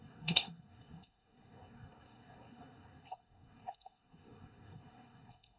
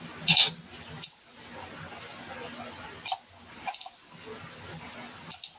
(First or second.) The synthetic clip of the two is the first